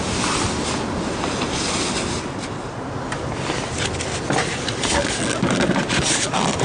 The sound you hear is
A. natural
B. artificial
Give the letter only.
A